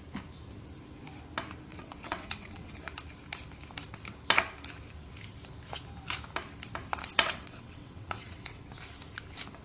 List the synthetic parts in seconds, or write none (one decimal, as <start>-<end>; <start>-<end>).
1.7-2.7; 7.0-8.6